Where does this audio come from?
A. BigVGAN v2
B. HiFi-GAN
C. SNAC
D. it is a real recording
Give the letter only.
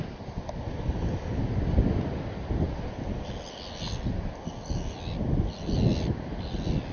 D